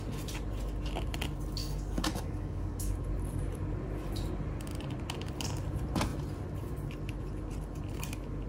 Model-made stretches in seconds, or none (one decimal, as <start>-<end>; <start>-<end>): 1.6-2.9